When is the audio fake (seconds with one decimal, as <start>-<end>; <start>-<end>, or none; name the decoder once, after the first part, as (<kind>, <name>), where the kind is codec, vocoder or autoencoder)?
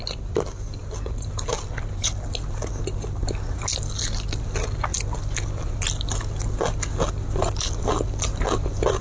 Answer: none